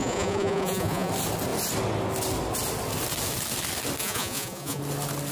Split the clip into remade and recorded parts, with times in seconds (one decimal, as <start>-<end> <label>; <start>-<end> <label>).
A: 0.0-1.1 remade; 1.1-4.0 recorded; 4.0-4.8 remade; 4.8-5.3 recorded